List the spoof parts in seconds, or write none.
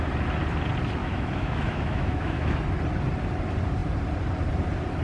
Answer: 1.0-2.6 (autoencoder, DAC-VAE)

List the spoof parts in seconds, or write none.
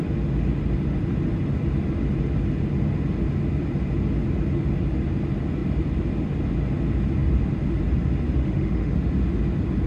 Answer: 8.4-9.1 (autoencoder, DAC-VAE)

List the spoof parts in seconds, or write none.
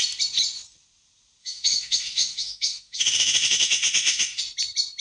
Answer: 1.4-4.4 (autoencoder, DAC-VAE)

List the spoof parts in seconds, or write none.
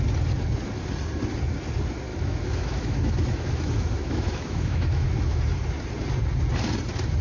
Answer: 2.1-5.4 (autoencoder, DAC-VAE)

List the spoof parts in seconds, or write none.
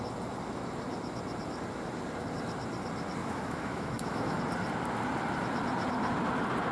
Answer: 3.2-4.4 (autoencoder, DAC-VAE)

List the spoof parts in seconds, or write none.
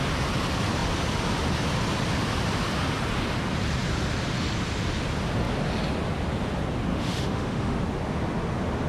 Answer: 6.9-7.8 (autoencoder, DAC-VAE)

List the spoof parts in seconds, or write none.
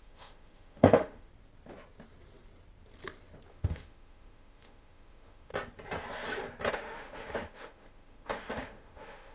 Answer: 0.0-1.3 (autoencoder, DAC-VAE); 3.5-5.5; 6.7-9.3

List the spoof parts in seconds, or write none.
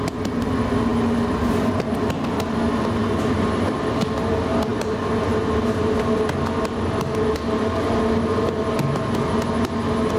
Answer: none